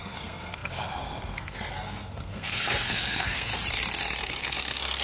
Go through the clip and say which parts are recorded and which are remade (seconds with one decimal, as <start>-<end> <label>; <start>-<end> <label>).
0.0-3.5 remade; 3.5-4.2 recorded; 4.2-5.0 remade